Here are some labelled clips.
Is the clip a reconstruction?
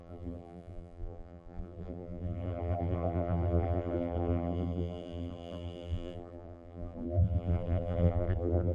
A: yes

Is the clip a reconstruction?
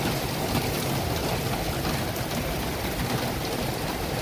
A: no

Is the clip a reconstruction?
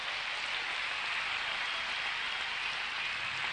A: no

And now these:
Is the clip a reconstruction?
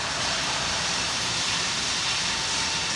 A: yes